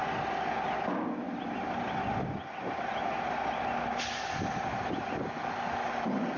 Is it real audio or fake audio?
real